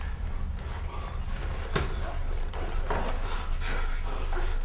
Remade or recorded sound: recorded